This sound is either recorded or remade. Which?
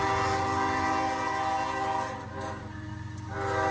recorded